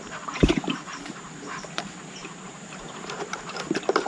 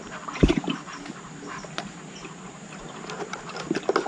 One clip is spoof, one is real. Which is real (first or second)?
second